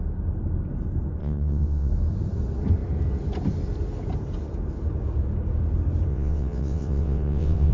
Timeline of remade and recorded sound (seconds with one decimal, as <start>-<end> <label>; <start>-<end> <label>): 0.0-1.2 recorded; 1.2-1.9 remade; 1.9-6.1 recorded; 6.1-7.7 remade